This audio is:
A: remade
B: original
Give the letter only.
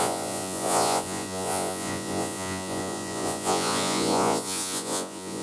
A